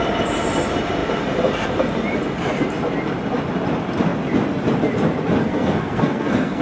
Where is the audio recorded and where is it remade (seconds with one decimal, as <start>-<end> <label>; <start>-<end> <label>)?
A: 0.0-5.4 recorded; 5.4-6.6 remade